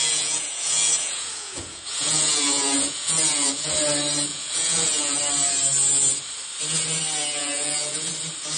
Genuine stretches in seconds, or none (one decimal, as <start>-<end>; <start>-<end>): 3.7-4.3; 5.2-7.4; 8.1-8.6